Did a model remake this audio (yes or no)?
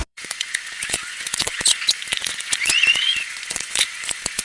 yes